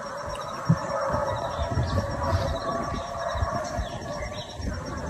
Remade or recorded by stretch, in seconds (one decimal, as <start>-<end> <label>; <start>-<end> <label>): 0.0-5.1 recorded